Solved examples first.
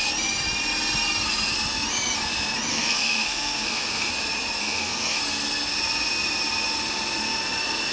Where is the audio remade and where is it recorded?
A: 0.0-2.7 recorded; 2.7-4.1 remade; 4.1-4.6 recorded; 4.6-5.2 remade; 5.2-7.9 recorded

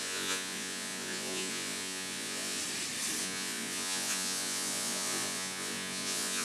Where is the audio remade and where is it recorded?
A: 0.0-2.6 remade; 2.6-3.2 recorded; 3.2-6.4 remade

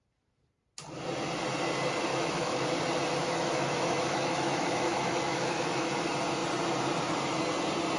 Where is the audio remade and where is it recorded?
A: 0.0-2.1 recorded; 2.1-2.8 remade; 2.8-3.2 recorded; 3.2-5.9 remade; 5.9-8.0 recorded

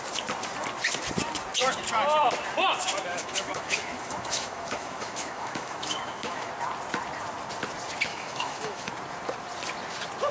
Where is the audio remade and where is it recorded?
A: 0.0-3.1 recorded; 3.1-6.5 remade; 6.5-8.1 recorded; 8.1-8.9 remade; 8.9-10.3 recorded